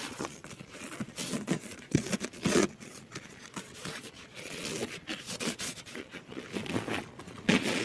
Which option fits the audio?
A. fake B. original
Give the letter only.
A